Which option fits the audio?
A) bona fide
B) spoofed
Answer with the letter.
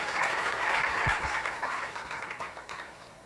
B